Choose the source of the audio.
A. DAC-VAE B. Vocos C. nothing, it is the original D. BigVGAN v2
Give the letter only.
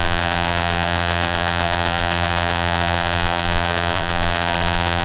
D